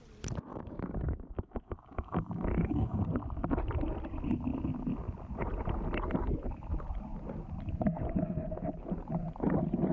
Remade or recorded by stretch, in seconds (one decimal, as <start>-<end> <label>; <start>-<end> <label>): 0.0-0.5 recorded; 0.5-3.0 remade; 3.0-9.9 recorded